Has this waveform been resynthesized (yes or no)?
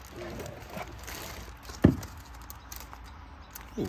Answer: no